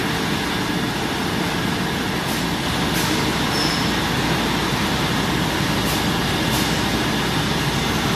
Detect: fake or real real